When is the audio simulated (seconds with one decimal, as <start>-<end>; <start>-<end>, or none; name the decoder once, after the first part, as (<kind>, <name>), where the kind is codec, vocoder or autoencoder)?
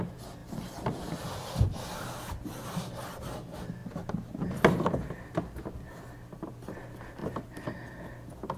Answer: 0.4-1.1 (vocoder, BigVGAN v2)